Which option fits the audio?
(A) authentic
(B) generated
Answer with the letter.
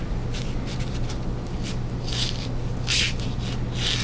A